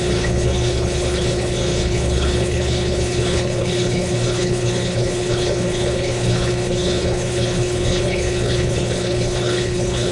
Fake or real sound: fake